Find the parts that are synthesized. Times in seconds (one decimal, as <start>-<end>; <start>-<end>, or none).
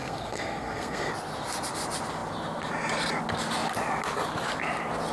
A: 0.0-1.1